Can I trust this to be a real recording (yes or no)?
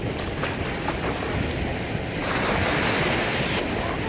yes